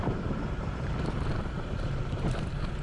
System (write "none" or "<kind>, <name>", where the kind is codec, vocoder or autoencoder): vocoder, BigVGAN v2